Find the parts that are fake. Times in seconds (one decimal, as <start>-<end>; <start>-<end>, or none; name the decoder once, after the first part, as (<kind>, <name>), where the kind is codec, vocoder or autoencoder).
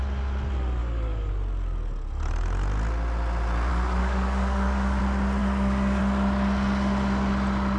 0.8-1.3 (codec, DAC); 3.7-5.0; 5.4-6.0